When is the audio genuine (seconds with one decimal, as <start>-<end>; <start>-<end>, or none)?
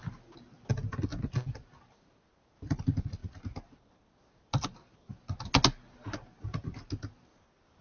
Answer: 0.0-7.8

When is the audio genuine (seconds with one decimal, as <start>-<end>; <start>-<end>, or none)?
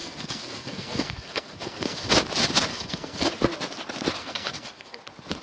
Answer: 2.1-2.7; 3.3-4.2; 5.0-5.4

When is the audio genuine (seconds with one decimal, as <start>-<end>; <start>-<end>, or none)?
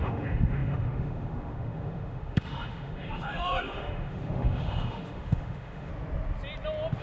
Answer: 5.9-7.0